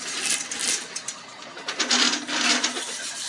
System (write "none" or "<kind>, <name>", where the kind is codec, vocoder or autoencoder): none